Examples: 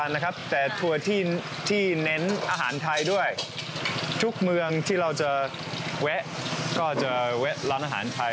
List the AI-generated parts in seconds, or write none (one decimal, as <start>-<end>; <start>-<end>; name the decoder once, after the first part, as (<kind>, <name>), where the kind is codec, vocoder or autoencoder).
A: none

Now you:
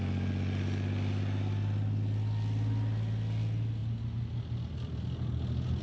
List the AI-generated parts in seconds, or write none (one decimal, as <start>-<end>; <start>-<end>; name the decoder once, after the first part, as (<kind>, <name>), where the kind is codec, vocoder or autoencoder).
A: none

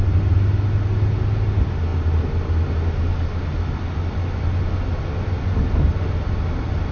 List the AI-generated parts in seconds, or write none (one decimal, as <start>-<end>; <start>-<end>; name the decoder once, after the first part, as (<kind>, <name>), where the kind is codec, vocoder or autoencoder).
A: none